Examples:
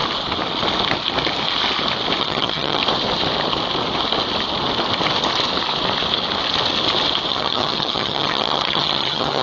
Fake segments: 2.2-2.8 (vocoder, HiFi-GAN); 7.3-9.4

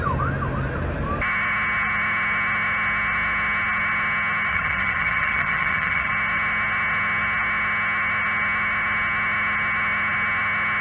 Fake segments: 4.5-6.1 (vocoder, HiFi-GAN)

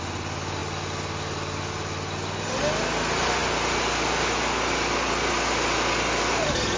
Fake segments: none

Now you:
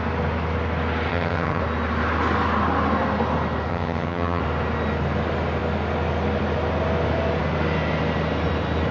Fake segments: 1.1-1.6 (vocoder, HiFi-GAN); 3.7-4.4

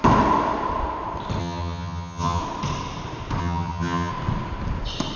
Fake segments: 1.4-2.4 (vocoder, HiFi-GAN); 3.4-4.1